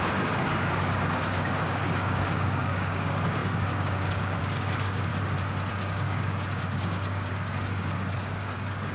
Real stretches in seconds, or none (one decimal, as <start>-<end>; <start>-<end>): 5.1-5.7